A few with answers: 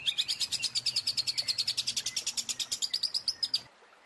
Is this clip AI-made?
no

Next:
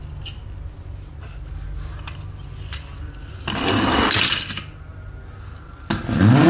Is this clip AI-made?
no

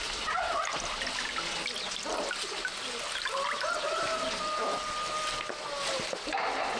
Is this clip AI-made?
no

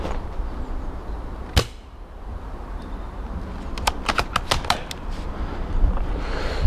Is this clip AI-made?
no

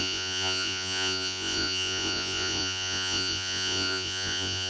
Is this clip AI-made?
yes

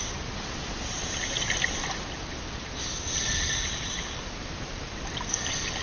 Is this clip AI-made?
no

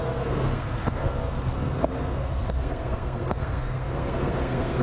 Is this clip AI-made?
yes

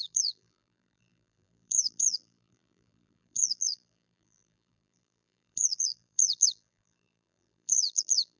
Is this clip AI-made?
yes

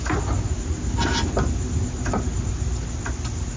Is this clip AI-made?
no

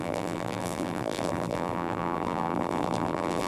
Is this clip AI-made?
yes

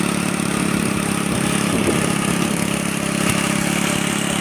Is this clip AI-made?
no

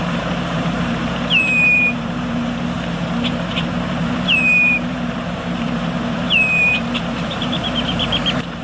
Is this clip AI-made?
yes